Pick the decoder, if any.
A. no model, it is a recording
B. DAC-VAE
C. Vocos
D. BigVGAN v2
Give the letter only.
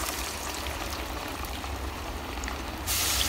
D